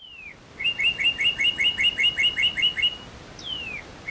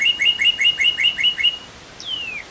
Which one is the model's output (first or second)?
second